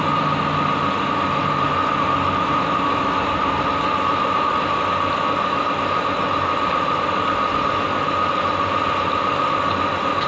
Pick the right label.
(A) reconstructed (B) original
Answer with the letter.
B